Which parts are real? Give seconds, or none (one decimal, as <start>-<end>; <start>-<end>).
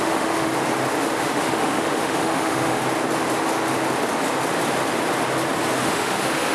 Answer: 0.5-1.0; 2.8-5.8